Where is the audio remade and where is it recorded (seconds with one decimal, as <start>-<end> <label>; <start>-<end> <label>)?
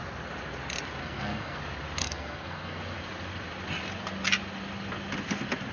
0.0-1.0 recorded; 1.0-1.6 remade; 1.6-2.0 recorded; 2.0-2.8 remade; 2.8-5.7 recorded